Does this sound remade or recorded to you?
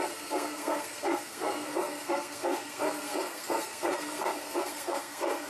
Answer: remade